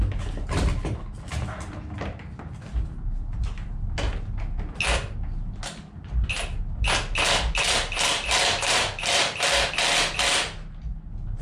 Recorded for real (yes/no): yes